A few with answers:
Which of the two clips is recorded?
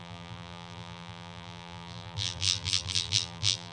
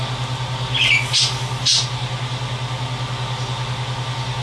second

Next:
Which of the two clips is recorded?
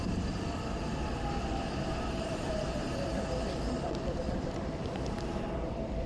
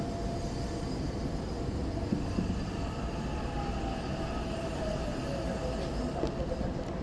second